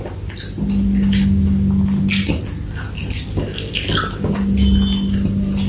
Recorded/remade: recorded